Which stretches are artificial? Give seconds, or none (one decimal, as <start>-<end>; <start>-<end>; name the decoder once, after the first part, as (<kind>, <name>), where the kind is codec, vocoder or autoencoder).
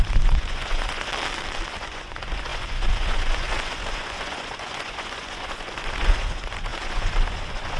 0.0-1.1 (vocoder, Vocos); 1.7-7.8